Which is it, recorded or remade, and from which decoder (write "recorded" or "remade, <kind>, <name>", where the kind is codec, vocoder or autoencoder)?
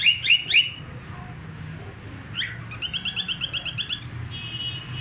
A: recorded